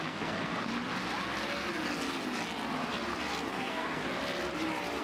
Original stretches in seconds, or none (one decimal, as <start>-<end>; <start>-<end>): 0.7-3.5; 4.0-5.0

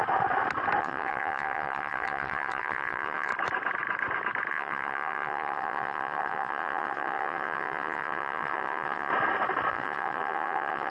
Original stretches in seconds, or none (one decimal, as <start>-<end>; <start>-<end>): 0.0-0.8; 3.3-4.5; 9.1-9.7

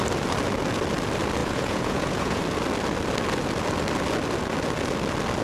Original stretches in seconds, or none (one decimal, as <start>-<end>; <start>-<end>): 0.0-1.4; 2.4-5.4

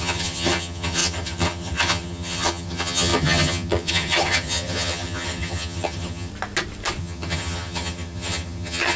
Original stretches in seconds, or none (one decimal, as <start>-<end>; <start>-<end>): 6.3-7.0

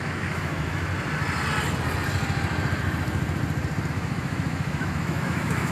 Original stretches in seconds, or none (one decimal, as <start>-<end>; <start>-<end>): 0.9-3.9

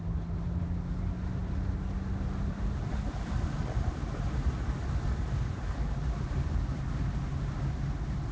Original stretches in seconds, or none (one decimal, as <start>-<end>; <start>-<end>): 0.0-8.3

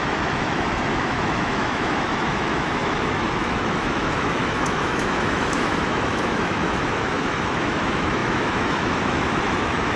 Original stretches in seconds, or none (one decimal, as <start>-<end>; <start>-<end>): none